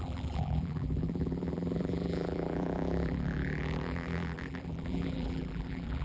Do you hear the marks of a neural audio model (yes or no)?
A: yes